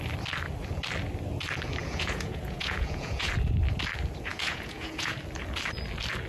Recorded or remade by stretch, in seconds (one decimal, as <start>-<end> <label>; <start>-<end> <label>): 0.0-1.8 recorded; 1.8-3.3 remade; 3.3-4.3 recorded; 4.3-5.2 remade; 5.2-6.3 recorded